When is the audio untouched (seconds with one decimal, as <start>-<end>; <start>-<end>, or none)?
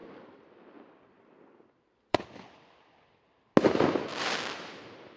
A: 3.0-4.1; 4.7-5.2